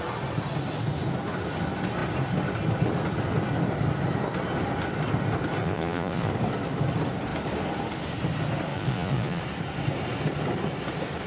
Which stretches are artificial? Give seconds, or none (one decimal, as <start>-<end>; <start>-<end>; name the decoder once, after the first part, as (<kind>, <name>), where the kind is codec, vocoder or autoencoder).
5.6-6.3 (vocoder, Vocos); 8.7-9.4